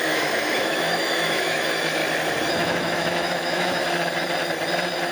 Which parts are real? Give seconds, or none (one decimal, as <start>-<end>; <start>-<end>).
2.0-2.5; 3.8-5.1